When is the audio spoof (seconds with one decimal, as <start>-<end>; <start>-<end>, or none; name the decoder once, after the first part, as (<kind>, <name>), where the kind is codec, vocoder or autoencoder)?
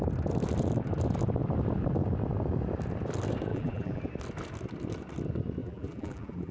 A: 3.5-4.0 (vocoder, BigVGAN v2); 5.6-6.5